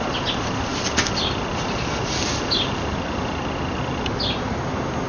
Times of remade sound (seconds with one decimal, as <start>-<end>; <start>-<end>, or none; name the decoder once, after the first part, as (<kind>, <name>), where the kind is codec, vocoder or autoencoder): none